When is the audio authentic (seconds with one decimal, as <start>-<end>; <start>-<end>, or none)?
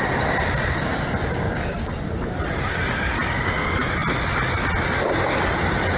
0.0-1.2; 1.9-6.0